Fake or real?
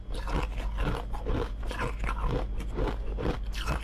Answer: real